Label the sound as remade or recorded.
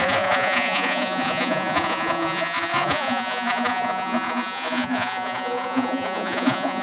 remade